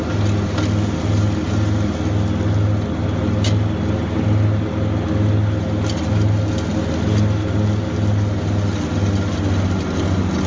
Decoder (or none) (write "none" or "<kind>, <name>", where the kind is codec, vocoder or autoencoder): none